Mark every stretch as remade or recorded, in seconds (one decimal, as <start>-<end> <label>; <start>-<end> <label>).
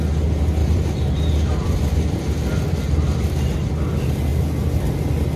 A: 0.0-0.6 recorded; 0.6-3.4 remade; 3.4-5.4 recorded